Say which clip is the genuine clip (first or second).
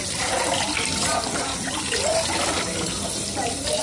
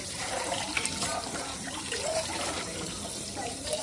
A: first